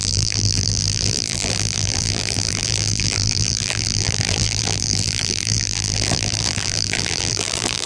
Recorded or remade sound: remade